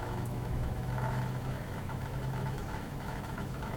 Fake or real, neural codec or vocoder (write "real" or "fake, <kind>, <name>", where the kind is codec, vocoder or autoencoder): fake, autoencoder, DAC-VAE